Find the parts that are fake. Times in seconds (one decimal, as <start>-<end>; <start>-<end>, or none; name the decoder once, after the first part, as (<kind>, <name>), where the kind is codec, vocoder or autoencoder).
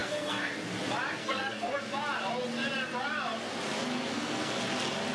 0.0-0.5 (codec, SNAC); 1.2-1.8; 4.1-4.6